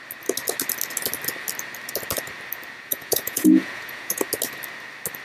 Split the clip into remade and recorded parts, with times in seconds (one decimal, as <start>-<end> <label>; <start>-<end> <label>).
0.0-2.9 recorded; 2.9-4.2 remade; 4.2-5.2 recorded